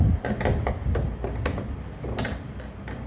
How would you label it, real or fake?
real